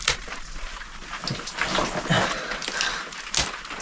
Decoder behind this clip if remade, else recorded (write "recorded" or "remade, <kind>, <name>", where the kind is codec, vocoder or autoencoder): recorded